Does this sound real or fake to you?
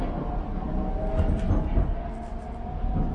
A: real